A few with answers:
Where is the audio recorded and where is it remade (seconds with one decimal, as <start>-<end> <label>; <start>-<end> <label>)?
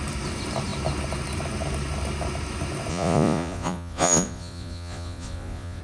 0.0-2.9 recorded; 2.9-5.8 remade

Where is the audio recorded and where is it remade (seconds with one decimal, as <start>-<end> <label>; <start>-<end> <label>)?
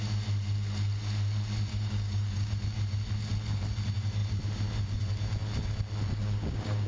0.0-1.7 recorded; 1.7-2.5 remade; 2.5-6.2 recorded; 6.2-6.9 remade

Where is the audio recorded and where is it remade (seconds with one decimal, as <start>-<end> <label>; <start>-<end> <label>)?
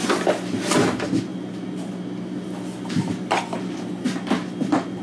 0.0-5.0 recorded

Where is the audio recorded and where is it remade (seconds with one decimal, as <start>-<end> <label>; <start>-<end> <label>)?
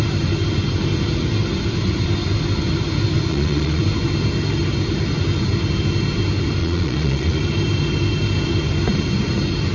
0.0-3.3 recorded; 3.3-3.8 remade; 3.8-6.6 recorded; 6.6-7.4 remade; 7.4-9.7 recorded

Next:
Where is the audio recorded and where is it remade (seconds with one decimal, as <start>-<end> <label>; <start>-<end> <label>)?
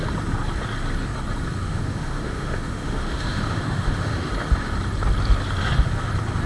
0.0-1.6 recorded; 1.6-4.3 remade; 4.3-6.5 recorded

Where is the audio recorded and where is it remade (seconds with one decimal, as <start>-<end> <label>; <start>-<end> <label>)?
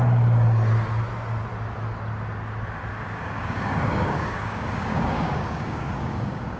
0.0-2.9 recorded; 2.9-6.6 remade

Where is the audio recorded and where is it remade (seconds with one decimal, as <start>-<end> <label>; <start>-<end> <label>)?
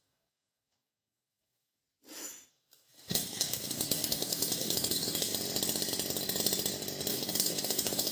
0.0-1.8 remade; 1.8-2.5 recorded; 2.5-5.3 remade; 5.3-7.1 recorded; 7.1-8.1 remade